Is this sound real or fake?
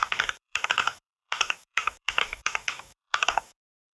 fake